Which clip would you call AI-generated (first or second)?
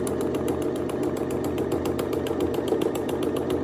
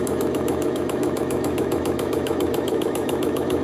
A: second